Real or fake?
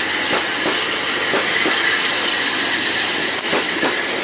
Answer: real